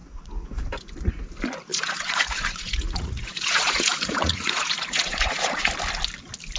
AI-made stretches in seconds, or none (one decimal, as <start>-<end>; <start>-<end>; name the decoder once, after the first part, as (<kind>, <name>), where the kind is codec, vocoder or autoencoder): 0.0-0.5 (vocoder, Vocos); 1.7-5.7

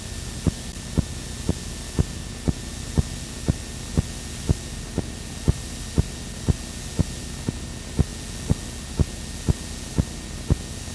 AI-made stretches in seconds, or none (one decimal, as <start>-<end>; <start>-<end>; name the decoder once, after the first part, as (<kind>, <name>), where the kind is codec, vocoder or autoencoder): none

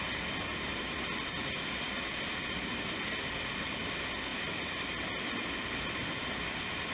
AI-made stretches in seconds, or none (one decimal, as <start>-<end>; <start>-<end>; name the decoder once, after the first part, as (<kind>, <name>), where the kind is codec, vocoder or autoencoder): 4.3-5.9 (vocoder, BigVGAN v2)

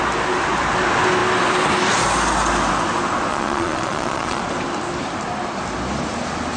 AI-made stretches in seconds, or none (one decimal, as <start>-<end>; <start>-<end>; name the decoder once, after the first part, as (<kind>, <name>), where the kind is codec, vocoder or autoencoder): 3.3-4.4 (vocoder, Vocos)

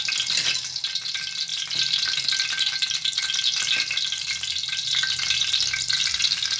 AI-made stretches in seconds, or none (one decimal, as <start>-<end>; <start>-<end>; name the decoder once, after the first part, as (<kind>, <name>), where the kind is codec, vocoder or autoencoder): none